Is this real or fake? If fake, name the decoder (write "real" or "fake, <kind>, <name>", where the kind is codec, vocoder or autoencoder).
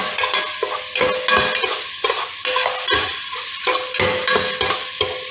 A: real